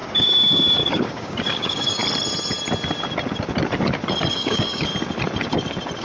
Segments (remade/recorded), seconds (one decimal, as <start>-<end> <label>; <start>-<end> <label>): 0.0-2.0 remade; 2.0-4.3 recorded; 4.3-4.9 remade; 4.9-6.0 recorded